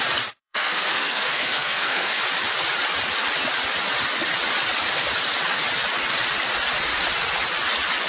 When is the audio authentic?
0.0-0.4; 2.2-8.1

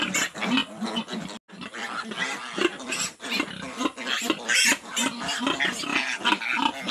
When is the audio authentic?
0.0-6.9

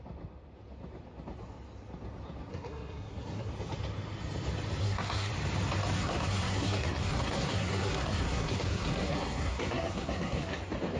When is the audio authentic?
0.0-2.5; 3.5-4.8; 5.3-6.0; 10.6-11.0

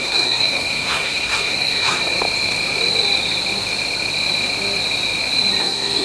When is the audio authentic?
2.0-5.6

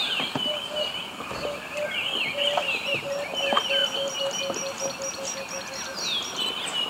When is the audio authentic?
0.0-6.9

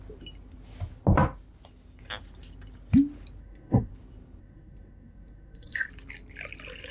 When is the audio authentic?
0.0-3.4; 3.9-4.4; 5.9-6.9